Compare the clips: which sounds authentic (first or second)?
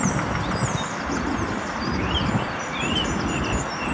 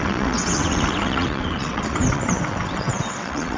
first